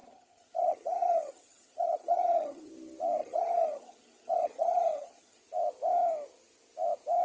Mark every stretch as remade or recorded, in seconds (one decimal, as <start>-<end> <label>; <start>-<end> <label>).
0.0-2.7 remade; 2.7-3.2 recorded; 3.2-5.4 remade; 5.4-7.2 recorded